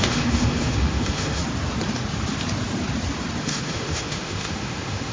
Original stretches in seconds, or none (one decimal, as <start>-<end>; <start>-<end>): 1.4-3.4